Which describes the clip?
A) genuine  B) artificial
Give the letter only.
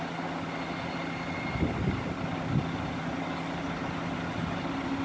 A